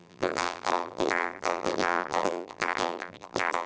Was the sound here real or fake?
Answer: fake